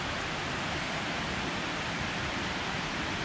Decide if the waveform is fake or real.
real